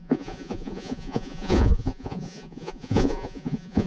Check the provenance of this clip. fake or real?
fake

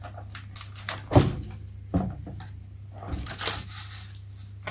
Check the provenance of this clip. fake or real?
real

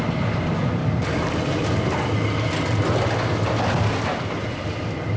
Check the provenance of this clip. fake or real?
real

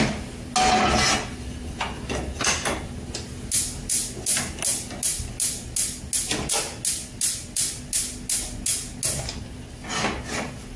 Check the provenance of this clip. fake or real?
real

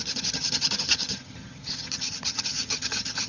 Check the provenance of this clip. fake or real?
fake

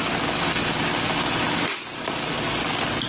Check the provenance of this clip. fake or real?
real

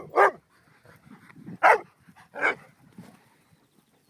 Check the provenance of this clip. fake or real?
real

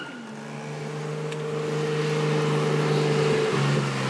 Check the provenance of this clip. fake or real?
real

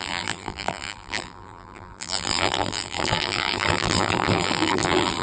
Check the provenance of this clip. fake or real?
fake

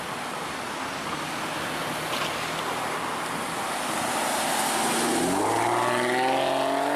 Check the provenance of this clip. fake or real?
real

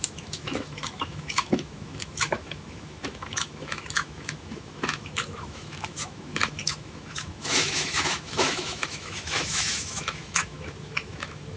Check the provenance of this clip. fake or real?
fake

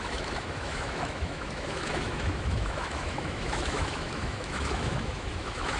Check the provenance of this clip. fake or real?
fake